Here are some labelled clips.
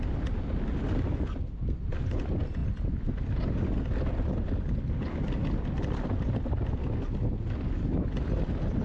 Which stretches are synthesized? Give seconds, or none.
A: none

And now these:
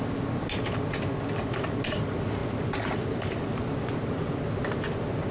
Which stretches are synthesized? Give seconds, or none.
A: none

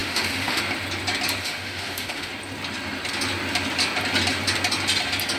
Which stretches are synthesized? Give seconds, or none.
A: 0.0-0.6 (autoencoder, DAC-VAE); 1.4-2.3

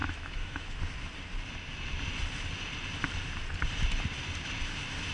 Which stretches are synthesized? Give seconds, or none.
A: 0.0-0.8 (autoencoder, DAC-VAE)

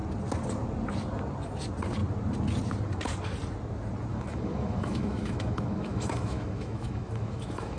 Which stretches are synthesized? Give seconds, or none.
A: 4.1-7.8 (autoencoder, DAC-VAE)